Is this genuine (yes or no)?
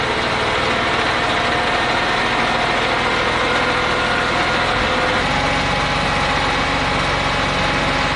yes